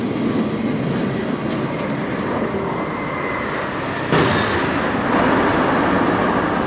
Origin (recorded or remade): recorded